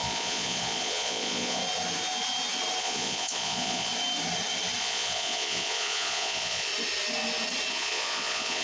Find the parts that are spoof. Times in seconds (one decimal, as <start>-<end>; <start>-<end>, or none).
0.0-1.6; 2.8-3.9; 4.8-6.7; 7.7-8.6